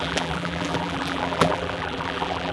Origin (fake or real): fake